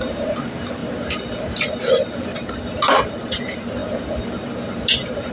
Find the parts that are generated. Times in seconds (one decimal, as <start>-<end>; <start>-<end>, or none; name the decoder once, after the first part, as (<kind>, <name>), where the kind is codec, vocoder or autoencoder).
0.0-3.8 (vocoder, BigVGAN v2)